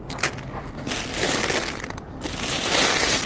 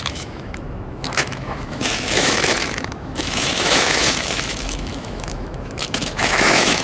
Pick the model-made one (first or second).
second